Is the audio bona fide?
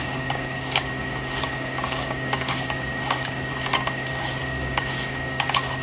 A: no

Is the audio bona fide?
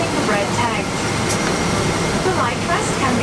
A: yes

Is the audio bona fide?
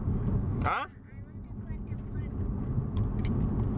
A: yes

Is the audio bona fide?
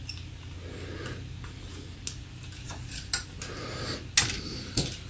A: yes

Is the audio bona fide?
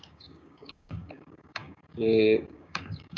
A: no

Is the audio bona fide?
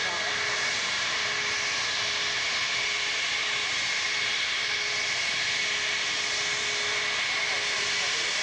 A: yes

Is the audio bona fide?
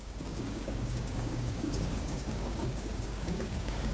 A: no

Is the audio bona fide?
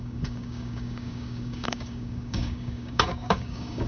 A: no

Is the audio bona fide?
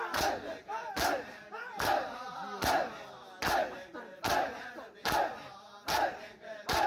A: yes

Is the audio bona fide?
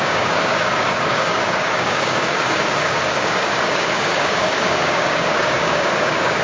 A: no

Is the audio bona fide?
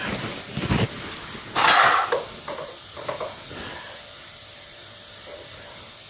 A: yes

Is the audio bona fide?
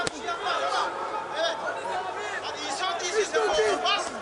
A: yes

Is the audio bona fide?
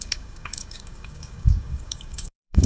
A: no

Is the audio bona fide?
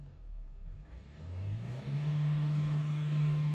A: no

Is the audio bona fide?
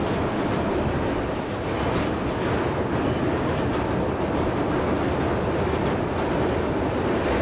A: yes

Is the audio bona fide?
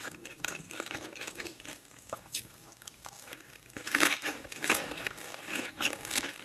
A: no